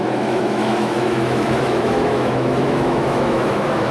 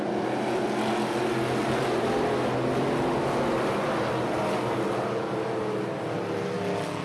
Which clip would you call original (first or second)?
second